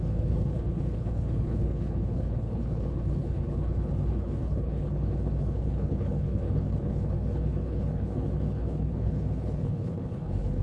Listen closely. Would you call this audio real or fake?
fake